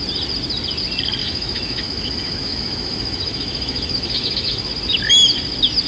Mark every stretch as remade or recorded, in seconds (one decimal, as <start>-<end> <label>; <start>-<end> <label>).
0.0-1.2 recorded; 1.2-4.7 remade; 4.7-5.9 recorded